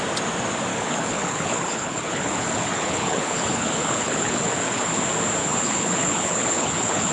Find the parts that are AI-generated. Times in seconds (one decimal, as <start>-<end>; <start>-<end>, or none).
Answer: 0.7-5.0; 5.4-7.1